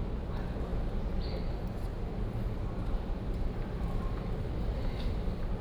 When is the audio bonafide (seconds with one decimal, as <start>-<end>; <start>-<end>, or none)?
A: 0.0-1.9